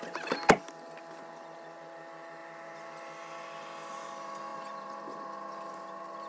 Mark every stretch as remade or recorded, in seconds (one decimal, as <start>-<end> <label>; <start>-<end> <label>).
0.0-6.3 recorded